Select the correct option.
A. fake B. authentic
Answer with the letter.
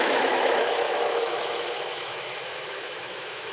A